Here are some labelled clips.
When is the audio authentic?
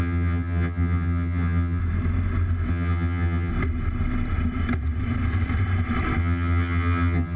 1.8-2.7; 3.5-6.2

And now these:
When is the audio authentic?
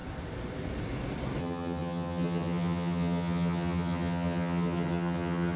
0.0-1.4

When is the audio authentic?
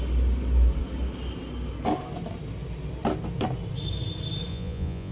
0.0-4.5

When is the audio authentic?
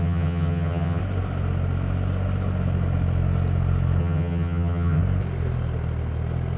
1.0-4.0; 5.0-6.6